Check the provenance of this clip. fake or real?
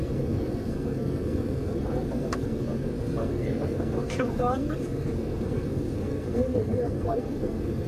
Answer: fake